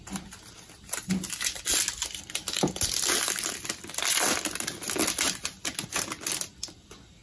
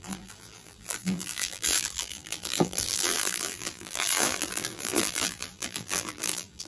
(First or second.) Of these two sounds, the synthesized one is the second